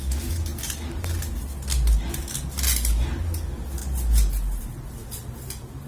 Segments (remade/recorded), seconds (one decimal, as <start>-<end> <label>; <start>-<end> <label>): 0.0-5.9 recorded